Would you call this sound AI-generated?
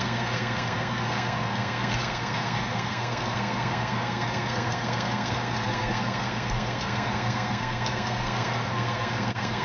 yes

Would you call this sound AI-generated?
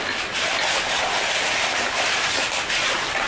no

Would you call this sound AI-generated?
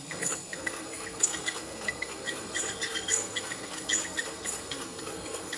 yes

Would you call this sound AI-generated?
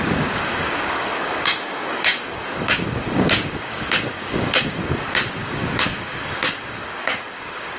yes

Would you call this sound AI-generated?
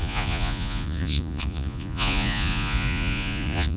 yes